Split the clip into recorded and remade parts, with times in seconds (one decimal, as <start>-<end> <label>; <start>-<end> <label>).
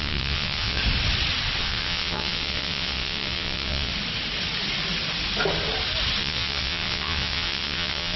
0.0-0.8 remade; 0.8-1.6 recorded; 1.6-3.9 remade; 3.9-6.2 recorded; 6.2-8.2 remade